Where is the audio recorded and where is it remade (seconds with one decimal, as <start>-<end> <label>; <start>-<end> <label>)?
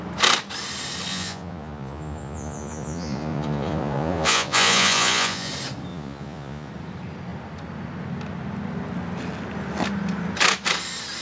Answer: 0.0-1.1 recorded; 1.1-5.5 remade; 5.5-5.9 recorded; 5.9-6.7 remade; 6.7-11.2 recorded